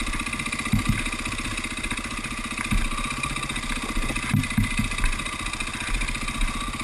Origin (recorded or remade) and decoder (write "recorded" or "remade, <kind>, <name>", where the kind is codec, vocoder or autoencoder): recorded